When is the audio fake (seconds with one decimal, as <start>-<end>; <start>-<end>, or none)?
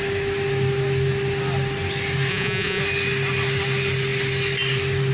2.3-2.8